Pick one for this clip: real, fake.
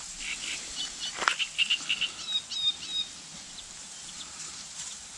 real